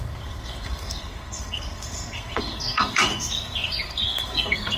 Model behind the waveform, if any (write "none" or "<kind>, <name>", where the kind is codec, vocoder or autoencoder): codec, SNAC